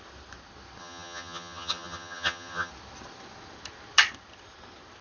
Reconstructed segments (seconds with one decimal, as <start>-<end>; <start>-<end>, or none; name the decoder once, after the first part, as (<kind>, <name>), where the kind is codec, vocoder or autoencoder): 0.8-2.7 (vocoder, HiFi-GAN)